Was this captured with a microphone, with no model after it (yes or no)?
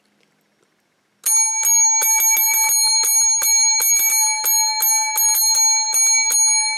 yes